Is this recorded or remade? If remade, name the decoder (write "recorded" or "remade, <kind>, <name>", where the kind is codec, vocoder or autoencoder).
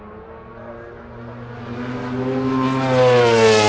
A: recorded